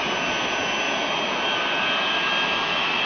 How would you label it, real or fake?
real